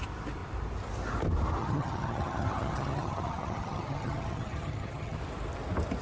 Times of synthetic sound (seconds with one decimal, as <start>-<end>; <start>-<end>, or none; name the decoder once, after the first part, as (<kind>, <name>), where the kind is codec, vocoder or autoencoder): 1.6-5.2 (vocoder, HiFi-GAN)